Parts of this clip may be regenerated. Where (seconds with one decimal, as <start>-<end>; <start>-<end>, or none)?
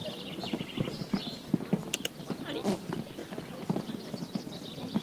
none